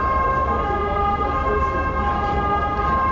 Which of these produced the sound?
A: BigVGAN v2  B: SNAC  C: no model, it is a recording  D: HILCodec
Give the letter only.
C